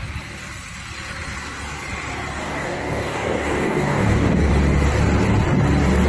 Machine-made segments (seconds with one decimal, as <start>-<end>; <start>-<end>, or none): 2.4-4.5